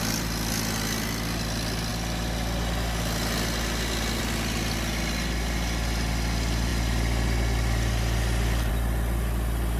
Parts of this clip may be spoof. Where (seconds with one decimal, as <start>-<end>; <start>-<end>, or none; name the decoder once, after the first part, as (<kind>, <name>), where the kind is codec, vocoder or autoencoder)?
none